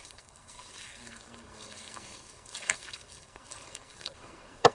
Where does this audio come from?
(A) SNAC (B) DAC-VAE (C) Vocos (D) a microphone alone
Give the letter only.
A